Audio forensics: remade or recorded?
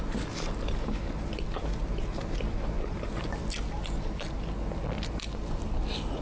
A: recorded